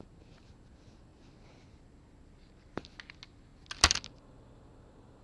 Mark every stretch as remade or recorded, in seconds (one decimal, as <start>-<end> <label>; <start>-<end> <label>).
0.0-5.2 recorded